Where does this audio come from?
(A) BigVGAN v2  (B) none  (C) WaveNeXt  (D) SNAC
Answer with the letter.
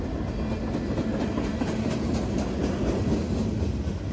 B